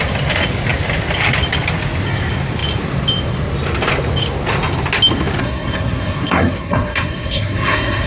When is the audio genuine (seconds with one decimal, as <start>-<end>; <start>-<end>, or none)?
0.0-5.4